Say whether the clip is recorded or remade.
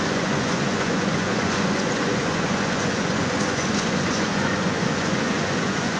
remade